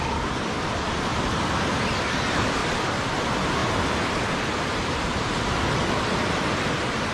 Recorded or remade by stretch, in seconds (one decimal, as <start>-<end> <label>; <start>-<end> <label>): 0.0-2.6 recorded; 2.6-3.1 remade; 3.1-7.1 recorded